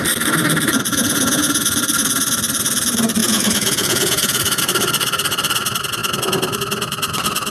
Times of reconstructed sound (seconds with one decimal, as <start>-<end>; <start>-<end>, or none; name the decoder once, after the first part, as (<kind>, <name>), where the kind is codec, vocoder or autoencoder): 0.9-1.6 (vocoder, Vocos); 3.2-4.6